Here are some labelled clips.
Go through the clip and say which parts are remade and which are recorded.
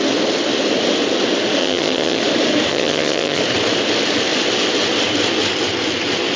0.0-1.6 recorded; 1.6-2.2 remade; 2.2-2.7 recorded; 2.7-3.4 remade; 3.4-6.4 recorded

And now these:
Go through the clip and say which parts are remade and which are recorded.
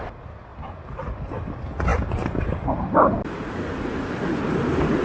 0.0-0.5 recorded; 0.5-1.5 remade; 1.5-1.9 recorded; 1.9-4.5 remade; 4.5-5.0 recorded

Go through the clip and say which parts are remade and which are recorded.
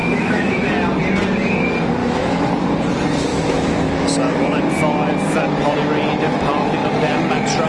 0.0-0.7 remade; 0.7-2.0 recorded; 2.0-2.5 remade; 2.5-3.3 recorded; 3.3-4.6 remade; 4.6-7.7 recorded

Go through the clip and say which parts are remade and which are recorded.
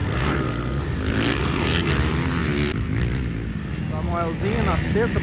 0.0-0.8 remade; 0.8-1.4 recorded; 1.4-1.9 remade; 1.9-5.2 recorded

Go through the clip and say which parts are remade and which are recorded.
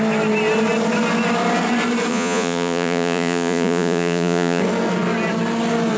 0.0-2.1 recorded; 2.1-4.6 remade; 4.6-6.0 recorded